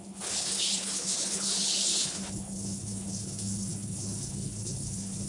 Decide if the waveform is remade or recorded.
remade